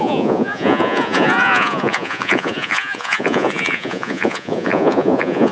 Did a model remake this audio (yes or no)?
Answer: yes